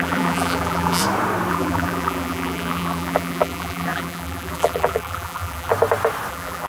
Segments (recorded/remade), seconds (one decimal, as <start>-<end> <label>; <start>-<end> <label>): 0.0-1.0 remade; 1.0-1.5 recorded; 1.5-5.7 remade; 5.7-6.3 recorded; 6.3-6.7 remade